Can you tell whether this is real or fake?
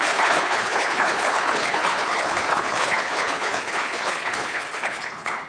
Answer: fake